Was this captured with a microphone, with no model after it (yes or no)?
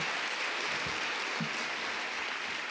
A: yes